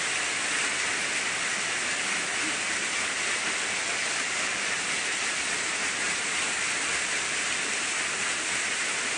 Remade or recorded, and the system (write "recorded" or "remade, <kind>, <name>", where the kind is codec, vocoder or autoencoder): recorded